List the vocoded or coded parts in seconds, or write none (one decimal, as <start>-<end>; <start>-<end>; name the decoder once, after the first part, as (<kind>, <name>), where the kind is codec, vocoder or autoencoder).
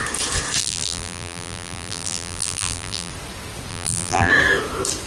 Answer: 0.6-3.1 (vocoder, BigVGAN v2); 3.7-4.3